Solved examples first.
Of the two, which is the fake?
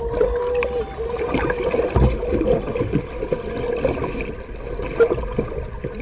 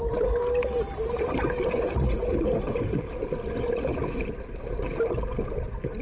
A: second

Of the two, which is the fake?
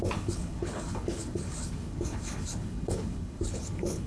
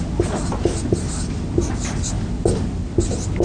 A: first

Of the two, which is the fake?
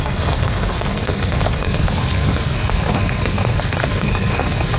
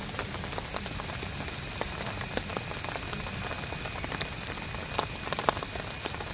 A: first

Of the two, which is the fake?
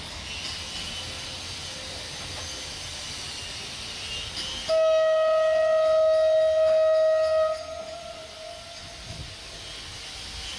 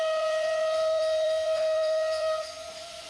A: second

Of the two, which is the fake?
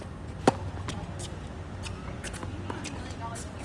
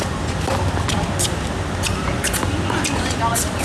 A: second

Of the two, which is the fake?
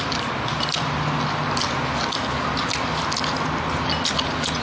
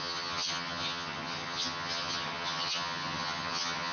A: second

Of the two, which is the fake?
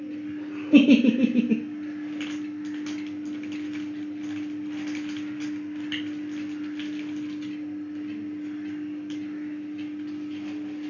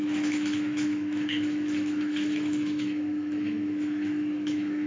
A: second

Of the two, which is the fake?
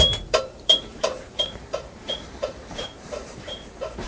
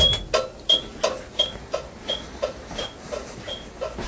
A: first